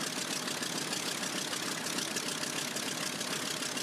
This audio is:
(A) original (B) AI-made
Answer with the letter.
A